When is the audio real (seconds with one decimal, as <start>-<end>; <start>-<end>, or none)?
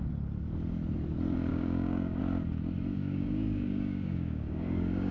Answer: 0.0-1.5; 2.2-2.9